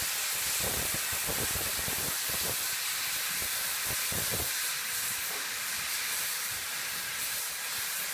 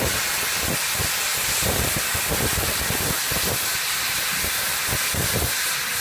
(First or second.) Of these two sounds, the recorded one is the second